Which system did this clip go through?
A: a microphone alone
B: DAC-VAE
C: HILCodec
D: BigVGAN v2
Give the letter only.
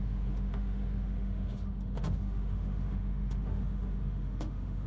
B